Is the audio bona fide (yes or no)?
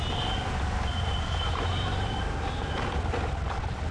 yes